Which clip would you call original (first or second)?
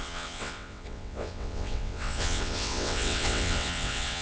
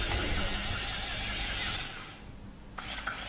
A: second